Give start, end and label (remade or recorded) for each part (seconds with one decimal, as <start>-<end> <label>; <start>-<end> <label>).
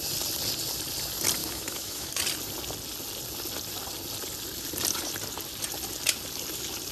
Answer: 0.0-1.4 recorded; 1.4-2.1 remade; 2.1-6.9 recorded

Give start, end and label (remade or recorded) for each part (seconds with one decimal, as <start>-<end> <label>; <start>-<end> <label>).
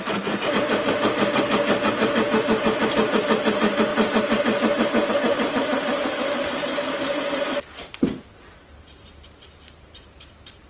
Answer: 0.0-3.9 remade; 3.9-5.1 recorded; 5.1-10.7 remade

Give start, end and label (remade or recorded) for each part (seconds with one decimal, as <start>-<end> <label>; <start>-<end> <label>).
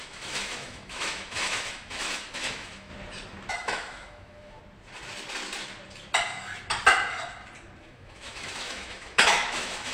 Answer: 0.0-2.9 remade; 2.9-3.5 recorded; 3.5-4.6 remade; 4.6-7.8 recorded; 7.8-9.9 remade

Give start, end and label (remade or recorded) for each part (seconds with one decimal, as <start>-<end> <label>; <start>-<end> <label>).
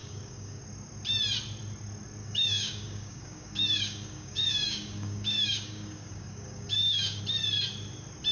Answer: 0.0-0.6 remade; 0.6-2.2 recorded; 2.2-7.2 remade; 7.2-8.3 recorded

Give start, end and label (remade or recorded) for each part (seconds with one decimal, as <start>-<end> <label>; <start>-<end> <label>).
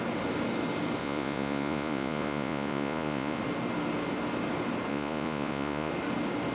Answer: 0.0-1.0 recorded; 1.0-3.4 remade; 3.4-4.9 recorded; 4.9-5.9 remade; 5.9-6.5 recorded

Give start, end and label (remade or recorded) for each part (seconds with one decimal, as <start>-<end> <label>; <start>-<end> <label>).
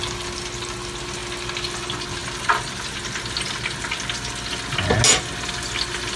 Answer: 0.0-6.2 recorded